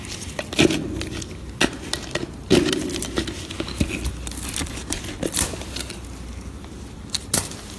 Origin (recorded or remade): recorded